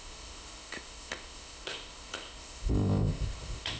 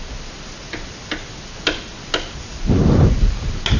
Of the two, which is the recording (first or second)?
second